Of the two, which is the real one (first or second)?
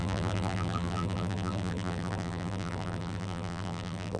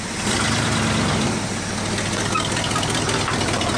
second